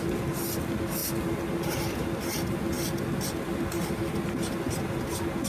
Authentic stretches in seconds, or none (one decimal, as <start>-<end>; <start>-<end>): 0.0-5.5